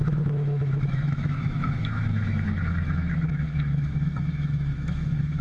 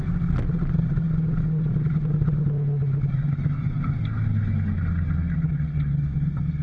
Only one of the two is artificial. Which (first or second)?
first